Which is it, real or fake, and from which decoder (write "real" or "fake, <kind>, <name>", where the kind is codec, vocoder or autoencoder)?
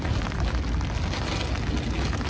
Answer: real